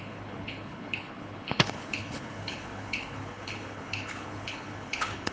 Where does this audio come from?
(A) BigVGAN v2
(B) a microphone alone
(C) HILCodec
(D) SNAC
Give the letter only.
C